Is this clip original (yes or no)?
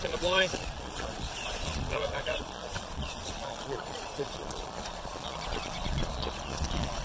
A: no